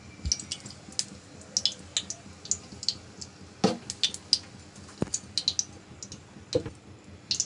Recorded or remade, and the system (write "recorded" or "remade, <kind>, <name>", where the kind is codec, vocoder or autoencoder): recorded